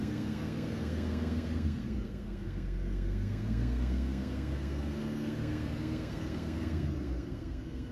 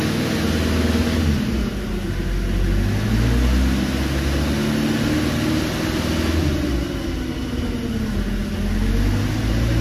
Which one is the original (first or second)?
second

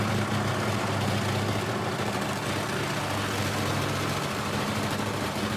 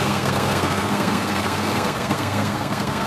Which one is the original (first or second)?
first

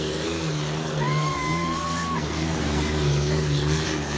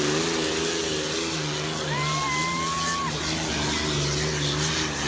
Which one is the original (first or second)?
second